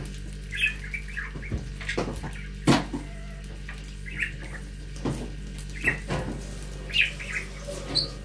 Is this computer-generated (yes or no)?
no